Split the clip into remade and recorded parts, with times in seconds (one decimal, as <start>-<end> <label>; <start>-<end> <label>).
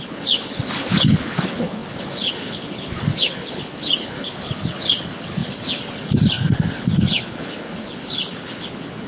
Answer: 0.0-9.1 remade